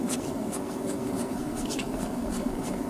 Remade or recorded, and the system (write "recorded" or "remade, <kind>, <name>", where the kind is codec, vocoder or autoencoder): remade, codec, SNAC